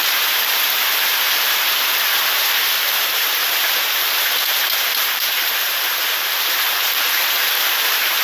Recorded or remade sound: remade